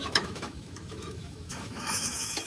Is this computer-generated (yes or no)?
yes